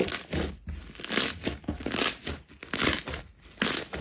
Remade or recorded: recorded